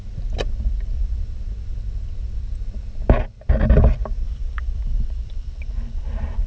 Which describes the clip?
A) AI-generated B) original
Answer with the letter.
B